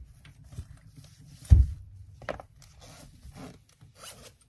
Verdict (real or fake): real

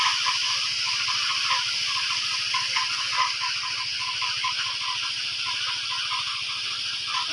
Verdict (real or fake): real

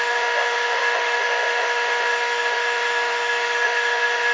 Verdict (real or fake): fake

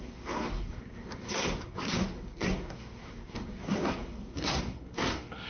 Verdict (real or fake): fake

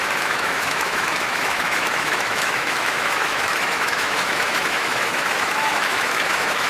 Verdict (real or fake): fake